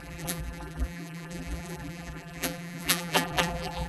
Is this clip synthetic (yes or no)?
yes